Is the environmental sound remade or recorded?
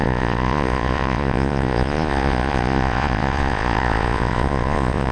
remade